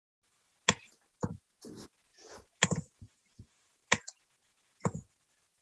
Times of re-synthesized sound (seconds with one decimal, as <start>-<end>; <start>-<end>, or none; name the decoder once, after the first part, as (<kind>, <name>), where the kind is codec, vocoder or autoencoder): 2.1-5.1 (vocoder, Vocos)